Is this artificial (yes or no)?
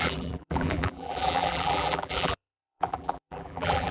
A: yes